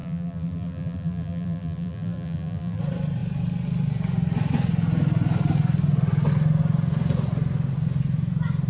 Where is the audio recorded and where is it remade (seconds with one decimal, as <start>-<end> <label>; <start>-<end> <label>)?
0.0-2.8 remade; 2.8-8.7 recorded